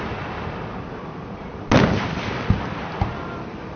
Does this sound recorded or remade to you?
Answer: recorded